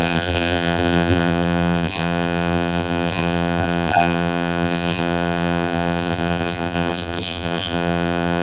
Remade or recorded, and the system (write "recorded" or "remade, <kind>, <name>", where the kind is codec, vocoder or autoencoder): remade, vocoder, BigVGAN v2